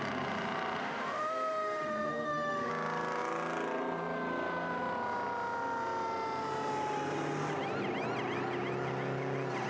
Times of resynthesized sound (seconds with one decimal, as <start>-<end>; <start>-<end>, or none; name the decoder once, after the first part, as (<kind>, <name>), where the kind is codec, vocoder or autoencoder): 0.8-2.7 (autoencoder, DAC-VAE)

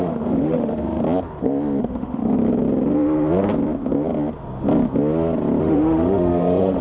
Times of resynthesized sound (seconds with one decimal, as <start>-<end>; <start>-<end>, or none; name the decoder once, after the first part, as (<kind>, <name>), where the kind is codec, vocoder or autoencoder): 0.0-1.0 (autoencoder, DAC-VAE); 1.8-2.2; 5.6-6.8

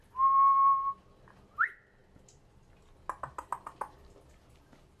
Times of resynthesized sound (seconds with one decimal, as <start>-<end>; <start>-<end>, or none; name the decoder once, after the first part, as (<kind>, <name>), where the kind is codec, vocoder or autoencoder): none

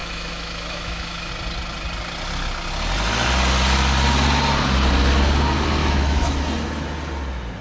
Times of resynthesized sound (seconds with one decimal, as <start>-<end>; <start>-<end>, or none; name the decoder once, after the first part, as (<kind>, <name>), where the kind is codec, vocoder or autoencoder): 0.0-1.3 (autoencoder, DAC-VAE); 5.8-6.4